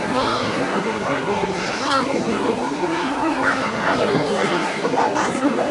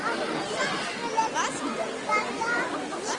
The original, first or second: second